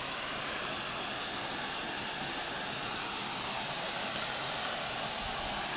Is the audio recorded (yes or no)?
yes